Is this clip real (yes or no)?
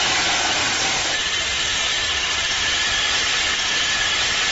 yes